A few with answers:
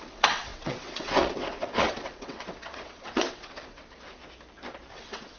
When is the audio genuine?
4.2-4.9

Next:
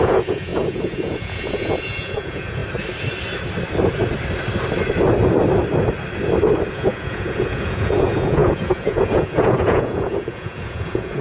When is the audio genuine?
2.6-6.7